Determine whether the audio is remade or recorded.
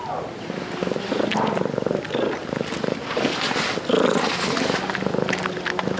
recorded